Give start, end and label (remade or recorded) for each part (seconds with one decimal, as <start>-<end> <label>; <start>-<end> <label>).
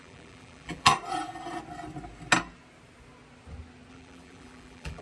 0.0-0.9 remade; 0.9-3.9 recorded; 3.9-5.0 remade